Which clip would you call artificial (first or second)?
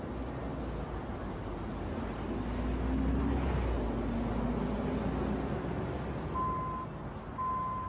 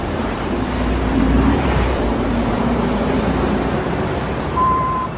second